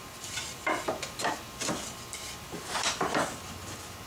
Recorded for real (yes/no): no